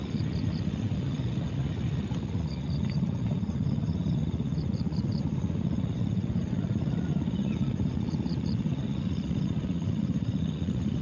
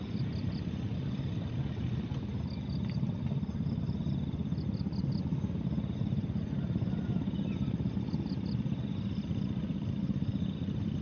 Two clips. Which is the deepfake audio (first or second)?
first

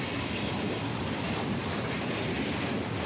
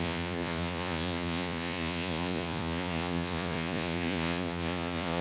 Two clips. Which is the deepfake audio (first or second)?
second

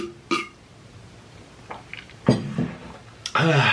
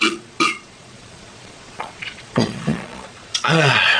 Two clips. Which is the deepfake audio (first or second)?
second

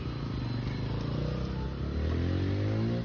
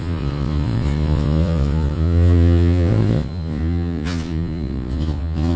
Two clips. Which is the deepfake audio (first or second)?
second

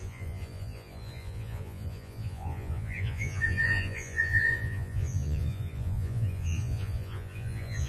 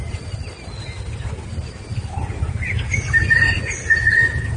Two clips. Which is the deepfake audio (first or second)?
first